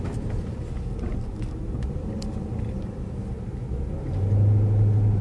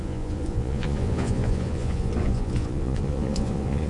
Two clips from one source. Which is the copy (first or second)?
second